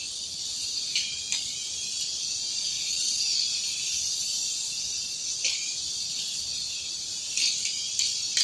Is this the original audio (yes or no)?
yes